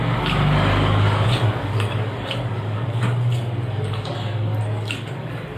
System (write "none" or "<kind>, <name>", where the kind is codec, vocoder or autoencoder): codec, DAC